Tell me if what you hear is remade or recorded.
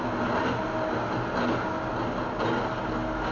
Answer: recorded